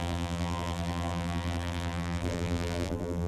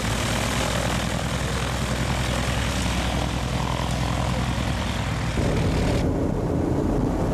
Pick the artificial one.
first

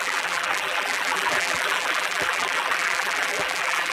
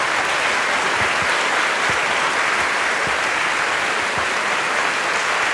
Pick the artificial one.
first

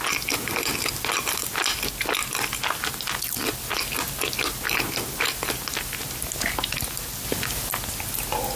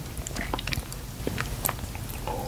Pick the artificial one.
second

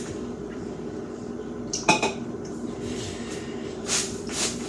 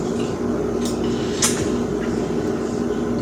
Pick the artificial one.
first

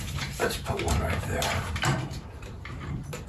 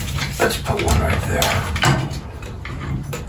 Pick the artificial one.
first